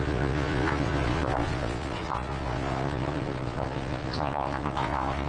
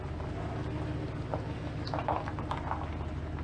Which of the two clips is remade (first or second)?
first